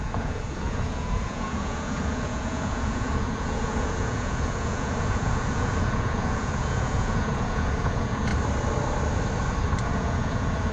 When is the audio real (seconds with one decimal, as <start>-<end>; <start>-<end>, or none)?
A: 8.3-9.8